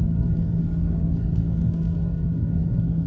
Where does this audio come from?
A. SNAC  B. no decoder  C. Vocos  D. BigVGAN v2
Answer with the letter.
A